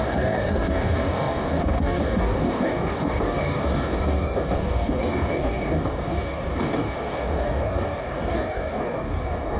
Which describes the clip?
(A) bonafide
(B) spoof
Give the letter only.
B